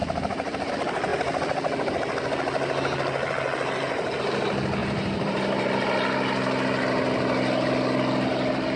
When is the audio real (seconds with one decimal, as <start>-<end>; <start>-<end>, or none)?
0.7-4.8; 5.6-8.8